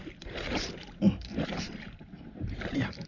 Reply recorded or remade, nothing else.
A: remade